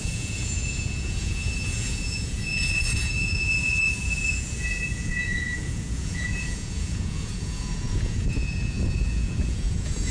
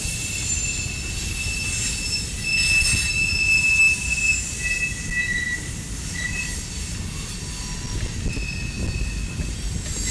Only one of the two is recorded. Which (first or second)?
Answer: second